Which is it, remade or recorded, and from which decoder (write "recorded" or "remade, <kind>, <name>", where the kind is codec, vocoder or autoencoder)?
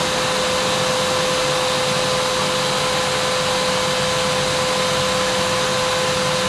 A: recorded